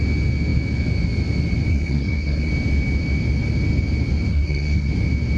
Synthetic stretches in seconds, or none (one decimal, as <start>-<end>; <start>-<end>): 1.7-2.5; 4.3-4.9